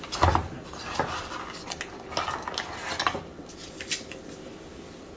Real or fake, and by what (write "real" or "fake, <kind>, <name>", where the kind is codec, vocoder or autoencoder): real